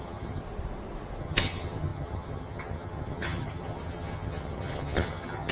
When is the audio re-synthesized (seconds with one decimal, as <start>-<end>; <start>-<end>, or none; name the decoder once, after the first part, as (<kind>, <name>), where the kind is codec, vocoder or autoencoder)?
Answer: 0.0-0.4 (vocoder, HiFi-GAN); 1.2-5.5